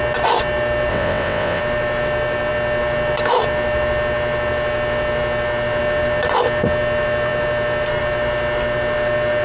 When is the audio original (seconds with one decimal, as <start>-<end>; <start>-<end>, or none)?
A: 0.0-0.9; 1.6-9.4